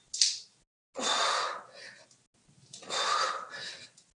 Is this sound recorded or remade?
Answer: recorded